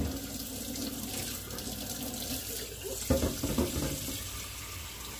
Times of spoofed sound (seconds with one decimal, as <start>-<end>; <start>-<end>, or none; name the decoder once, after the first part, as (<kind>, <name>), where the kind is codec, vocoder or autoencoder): none